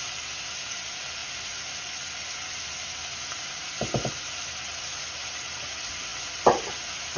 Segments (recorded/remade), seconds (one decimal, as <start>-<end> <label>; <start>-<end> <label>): 0.0-7.2 recorded